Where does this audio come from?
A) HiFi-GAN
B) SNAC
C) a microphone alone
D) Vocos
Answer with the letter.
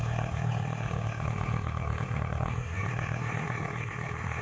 B